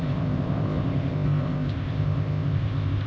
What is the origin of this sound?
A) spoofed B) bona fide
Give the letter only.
A